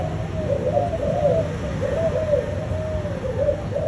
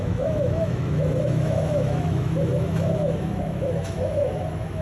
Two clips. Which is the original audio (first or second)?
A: first